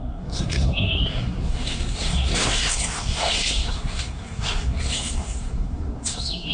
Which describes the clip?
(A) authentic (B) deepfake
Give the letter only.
B